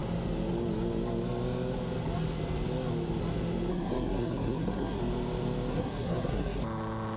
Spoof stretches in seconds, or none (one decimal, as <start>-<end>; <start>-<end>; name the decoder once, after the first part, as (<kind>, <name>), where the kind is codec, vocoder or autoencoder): 3.7-5.0 (codec, SNAC); 5.7-6.6